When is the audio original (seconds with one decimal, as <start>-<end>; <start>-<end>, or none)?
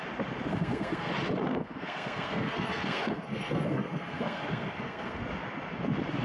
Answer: 0.0-0.5; 1.1-1.5; 5.2-6.2